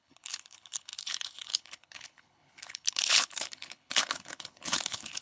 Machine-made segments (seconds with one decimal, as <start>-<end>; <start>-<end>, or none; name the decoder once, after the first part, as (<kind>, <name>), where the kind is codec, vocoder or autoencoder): 0.0-5.2 (codec, HILCodec)